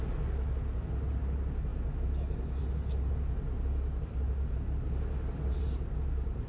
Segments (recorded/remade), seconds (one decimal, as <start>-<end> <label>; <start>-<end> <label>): 0.0-6.5 recorded